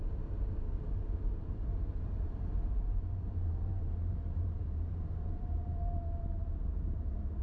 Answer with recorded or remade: remade